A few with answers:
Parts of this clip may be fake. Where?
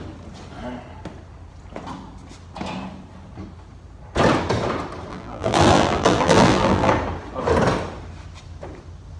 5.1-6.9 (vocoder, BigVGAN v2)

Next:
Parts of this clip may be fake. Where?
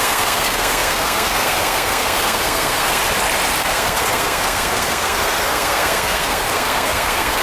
0.0-3.0 (codec, SNAC); 3.6-7.4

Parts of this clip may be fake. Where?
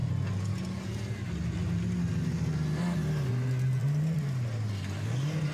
none